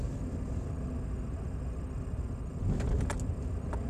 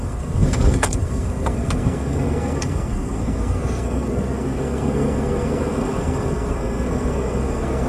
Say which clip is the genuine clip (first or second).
first